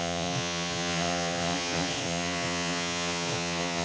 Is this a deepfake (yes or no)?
yes